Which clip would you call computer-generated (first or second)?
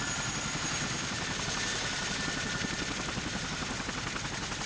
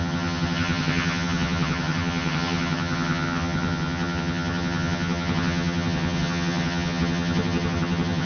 second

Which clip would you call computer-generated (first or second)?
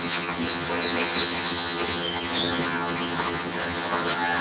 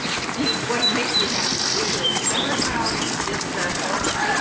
first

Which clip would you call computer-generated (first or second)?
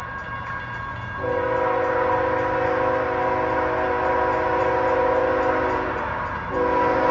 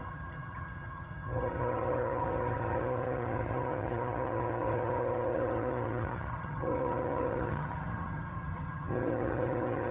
second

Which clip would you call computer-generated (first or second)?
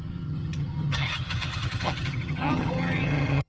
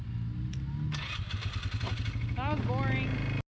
first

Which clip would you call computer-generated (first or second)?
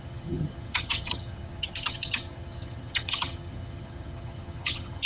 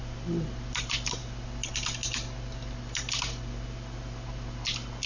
first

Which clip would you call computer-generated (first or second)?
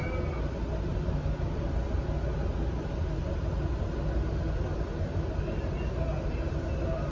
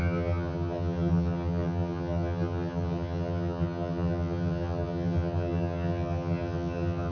second